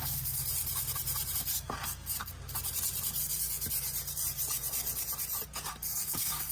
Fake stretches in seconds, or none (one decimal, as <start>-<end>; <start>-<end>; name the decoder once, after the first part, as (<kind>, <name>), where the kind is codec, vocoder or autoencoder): 0.0-0.4 (codec, SNAC); 1.4-2.3; 5.7-6.5